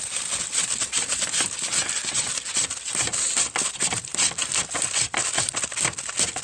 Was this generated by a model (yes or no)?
no